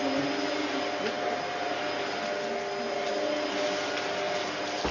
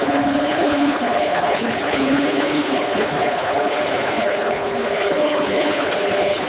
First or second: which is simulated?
second